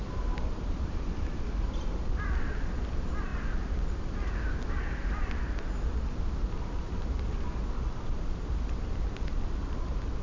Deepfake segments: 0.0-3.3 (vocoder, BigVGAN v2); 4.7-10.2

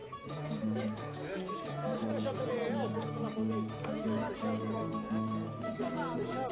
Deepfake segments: 0.0-3.0 (vocoder, Vocos)

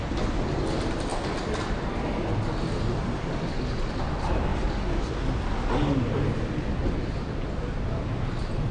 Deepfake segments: none

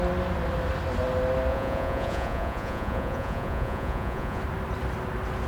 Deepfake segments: 1.5-4.4 (vocoder, Vocos)

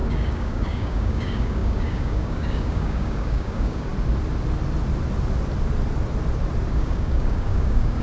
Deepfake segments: 0.0-3.9 (codec, DAC); 6.7-8.0

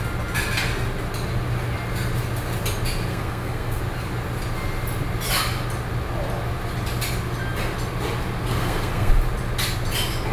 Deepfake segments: 3.1-3.8 (codec, SNAC); 8.5-9.1

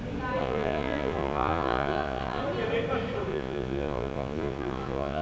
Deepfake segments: 0.4-2.4 (vocoder, Vocos); 3.3-5.2